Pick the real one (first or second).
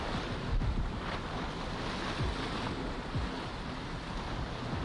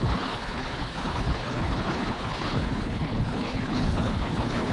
first